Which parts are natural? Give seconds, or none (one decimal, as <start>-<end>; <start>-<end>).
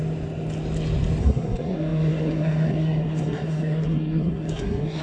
0.0-1.2